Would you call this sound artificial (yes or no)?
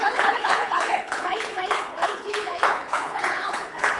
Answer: yes